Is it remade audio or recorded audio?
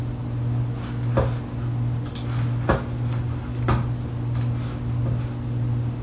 recorded